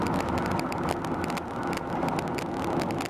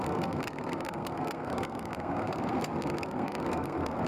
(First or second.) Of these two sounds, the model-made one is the second